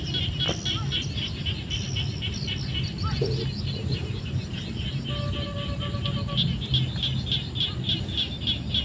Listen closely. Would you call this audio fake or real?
real